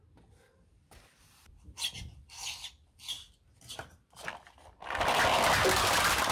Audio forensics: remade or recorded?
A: recorded